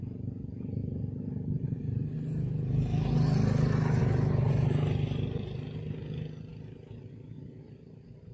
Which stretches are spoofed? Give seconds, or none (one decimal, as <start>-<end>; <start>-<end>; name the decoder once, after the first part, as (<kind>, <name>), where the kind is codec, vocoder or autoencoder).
none